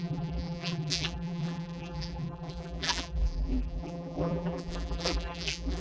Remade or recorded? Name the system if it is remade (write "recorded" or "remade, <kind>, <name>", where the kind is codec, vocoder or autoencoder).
remade, vocoder, BigVGAN v2